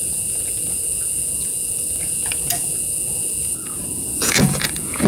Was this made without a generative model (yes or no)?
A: no